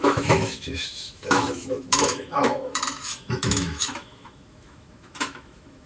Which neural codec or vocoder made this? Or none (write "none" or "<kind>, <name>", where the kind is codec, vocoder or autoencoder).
autoencoder, DAC-VAE